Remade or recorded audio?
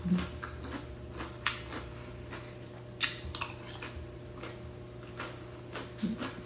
recorded